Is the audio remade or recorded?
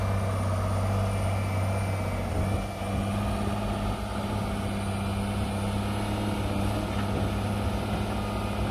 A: recorded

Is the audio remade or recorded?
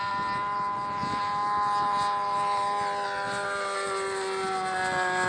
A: recorded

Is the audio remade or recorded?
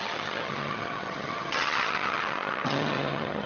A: remade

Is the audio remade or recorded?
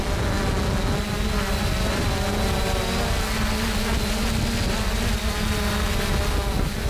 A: recorded